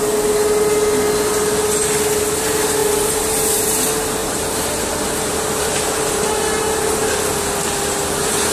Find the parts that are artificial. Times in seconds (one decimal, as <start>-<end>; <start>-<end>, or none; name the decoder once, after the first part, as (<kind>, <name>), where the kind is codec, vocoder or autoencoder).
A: 4.2-6.2 (vocoder, BigVGAN v2)